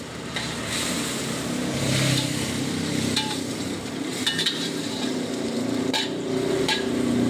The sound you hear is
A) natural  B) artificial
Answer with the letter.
B